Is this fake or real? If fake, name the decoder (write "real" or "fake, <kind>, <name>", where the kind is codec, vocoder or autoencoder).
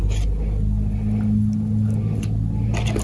real